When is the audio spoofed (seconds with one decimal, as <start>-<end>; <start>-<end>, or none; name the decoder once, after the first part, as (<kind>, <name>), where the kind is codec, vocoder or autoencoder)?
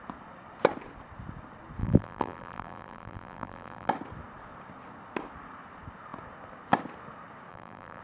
1.8-3.9 (vocoder, BigVGAN v2); 7.5-8.0